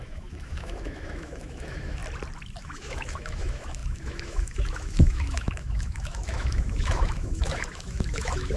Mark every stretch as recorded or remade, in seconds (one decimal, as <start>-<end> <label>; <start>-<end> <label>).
0.0-2.0 remade; 2.0-2.6 recorded; 2.6-8.6 remade